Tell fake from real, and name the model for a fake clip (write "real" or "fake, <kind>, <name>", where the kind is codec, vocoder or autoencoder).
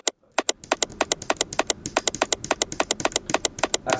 real